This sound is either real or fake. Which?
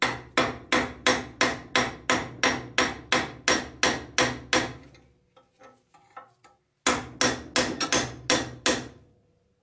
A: real